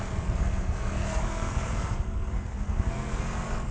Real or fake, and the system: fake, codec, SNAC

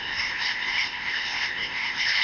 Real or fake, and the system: fake, codec, ZipCodec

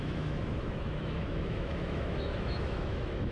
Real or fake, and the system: fake, autoencoder, DAC-VAE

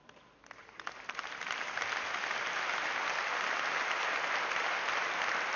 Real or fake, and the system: real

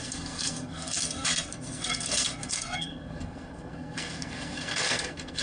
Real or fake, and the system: fake, codec, SNAC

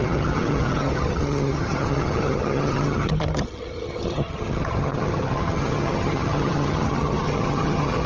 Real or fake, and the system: fake, vocoder, HiFi-GAN